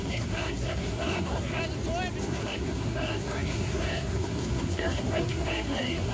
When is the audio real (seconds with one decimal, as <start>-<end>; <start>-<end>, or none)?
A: 1.6-2.2